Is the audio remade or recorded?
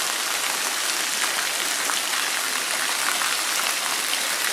recorded